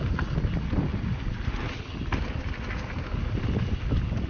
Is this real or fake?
real